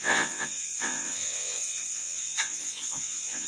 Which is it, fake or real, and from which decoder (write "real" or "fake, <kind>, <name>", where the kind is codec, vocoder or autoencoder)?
fake, vocoder, WaveNeXt